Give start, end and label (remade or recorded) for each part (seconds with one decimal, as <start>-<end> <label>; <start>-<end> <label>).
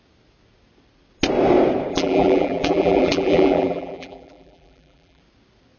0.0-1.9 recorded; 1.9-5.2 remade; 5.2-5.8 recorded